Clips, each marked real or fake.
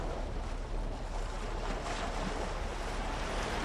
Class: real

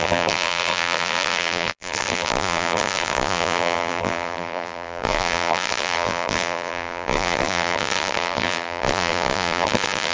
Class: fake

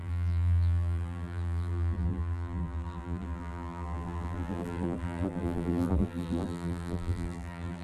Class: fake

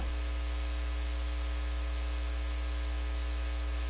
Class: real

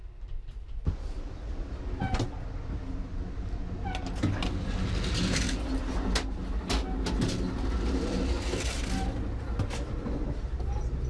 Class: real